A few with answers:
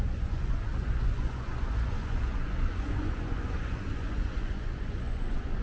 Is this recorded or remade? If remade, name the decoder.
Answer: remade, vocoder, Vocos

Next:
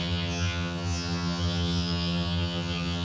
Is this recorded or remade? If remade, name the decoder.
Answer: remade, vocoder, HiFi-GAN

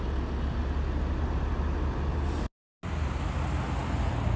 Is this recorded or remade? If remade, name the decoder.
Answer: recorded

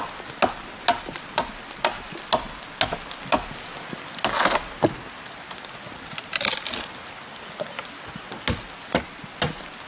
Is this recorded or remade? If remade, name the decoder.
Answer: recorded